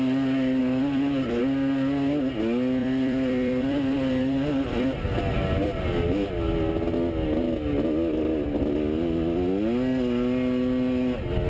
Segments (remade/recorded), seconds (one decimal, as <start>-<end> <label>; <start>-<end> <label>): 0.0-0.6 recorded; 0.6-1.4 remade; 1.4-2.8 recorded; 2.8-5.3 remade; 5.3-11.5 recorded

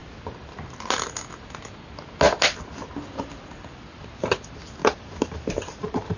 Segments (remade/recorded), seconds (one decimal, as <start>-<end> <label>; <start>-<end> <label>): 0.0-4.8 recorded; 4.8-6.2 remade

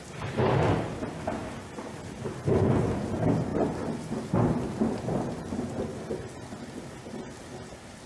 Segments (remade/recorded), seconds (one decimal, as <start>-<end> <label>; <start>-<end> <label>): 0.0-8.1 recorded

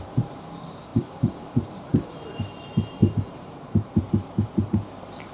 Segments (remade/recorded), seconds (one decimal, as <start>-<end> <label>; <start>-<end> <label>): 0.0-5.3 remade

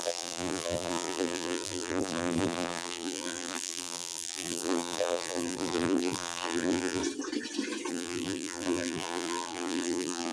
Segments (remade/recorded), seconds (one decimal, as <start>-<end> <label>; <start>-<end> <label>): 0.0-7.0 remade; 7.0-7.9 recorded; 7.9-10.3 remade

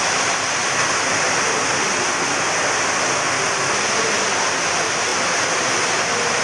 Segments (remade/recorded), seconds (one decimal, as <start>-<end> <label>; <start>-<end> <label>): 0.0-0.6 remade; 0.6-4.4 recorded; 4.4-6.4 remade

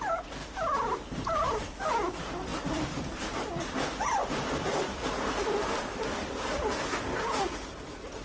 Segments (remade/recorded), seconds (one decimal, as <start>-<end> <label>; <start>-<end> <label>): 0.0-0.4 recorded; 0.4-1.8 remade; 1.8-2.5 recorded; 2.5-5.8 remade; 5.8-8.2 recorded

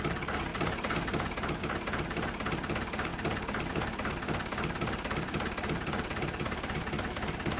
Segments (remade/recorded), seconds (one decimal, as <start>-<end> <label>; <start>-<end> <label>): 0.0-7.6 remade